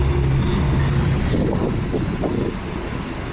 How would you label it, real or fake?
real